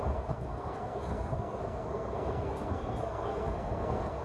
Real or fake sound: fake